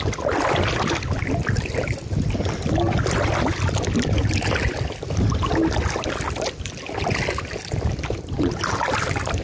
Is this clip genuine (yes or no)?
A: yes